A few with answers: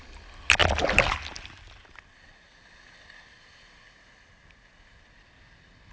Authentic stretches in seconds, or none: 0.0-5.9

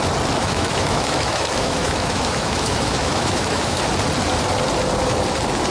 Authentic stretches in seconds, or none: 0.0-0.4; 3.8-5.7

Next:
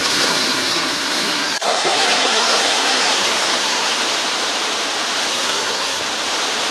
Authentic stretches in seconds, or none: 4.0-5.3; 6.0-6.7

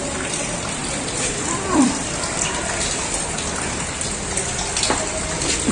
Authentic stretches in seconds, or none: 0.0-0.8; 3.3-5.7

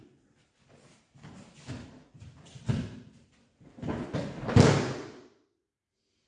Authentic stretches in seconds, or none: 0.0-2.0; 4.4-6.3